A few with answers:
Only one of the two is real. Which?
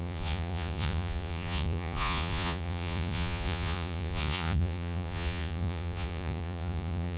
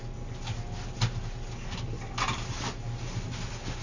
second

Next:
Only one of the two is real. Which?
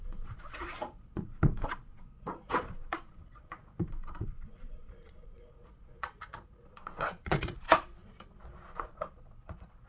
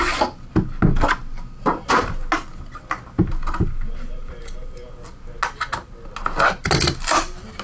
second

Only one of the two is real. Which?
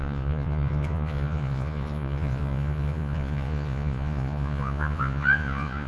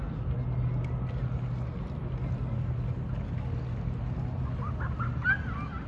second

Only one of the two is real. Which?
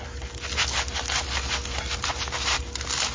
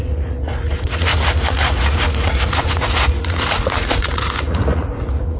first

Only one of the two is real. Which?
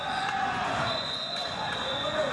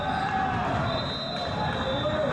second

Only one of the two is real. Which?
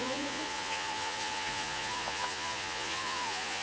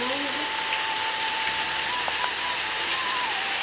second